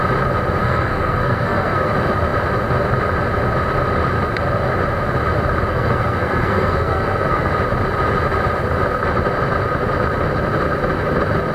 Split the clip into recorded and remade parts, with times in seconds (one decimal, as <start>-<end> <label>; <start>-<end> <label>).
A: 0.0-0.6 recorded; 0.6-1.9 remade; 1.9-5.7 recorded; 5.7-7.5 remade; 7.5-11.5 recorded

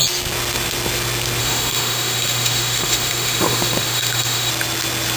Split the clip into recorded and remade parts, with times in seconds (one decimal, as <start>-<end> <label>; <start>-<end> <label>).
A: 0.0-1.4 recorded; 1.4-4.5 remade; 4.5-5.2 recorded

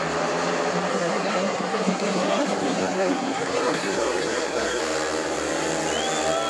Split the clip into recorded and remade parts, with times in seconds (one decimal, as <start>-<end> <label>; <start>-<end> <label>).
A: 0.0-0.9 recorded; 0.9-4.8 remade; 4.8-6.5 recorded